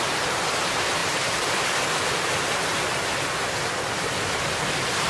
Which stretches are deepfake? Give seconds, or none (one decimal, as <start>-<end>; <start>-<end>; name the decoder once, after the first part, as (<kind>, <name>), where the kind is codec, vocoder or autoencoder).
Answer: 1.0-2.3 (vocoder, BigVGAN v2)